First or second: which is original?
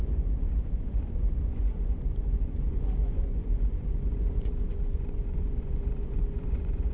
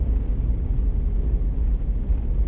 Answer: second